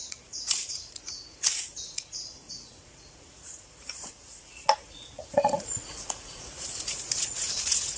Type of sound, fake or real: fake